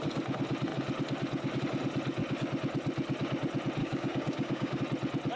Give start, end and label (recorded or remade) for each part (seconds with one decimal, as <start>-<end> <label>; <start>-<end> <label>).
0.0-3.8 recorded; 3.8-4.8 remade; 4.8-5.4 recorded